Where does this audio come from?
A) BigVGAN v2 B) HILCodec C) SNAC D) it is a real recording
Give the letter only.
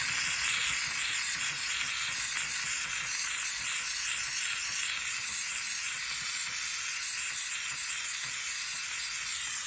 D